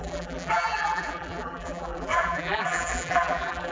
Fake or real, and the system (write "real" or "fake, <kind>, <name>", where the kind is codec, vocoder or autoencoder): fake, vocoder, BigVGAN v2